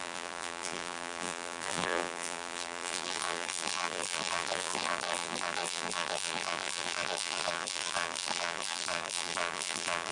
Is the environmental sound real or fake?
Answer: fake